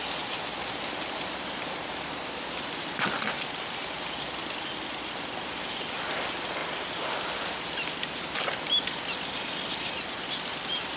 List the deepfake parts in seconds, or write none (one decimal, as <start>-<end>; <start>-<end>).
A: none